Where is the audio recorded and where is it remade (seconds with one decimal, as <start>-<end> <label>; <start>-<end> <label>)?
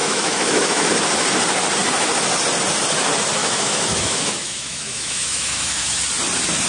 0.0-0.9 remade; 0.9-3.4 recorded; 3.4-6.0 remade; 6.0-6.7 recorded